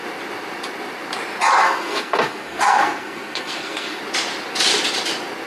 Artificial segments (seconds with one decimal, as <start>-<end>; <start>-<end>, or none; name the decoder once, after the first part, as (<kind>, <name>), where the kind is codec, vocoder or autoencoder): 1.6-4.0 (codec, SNAC)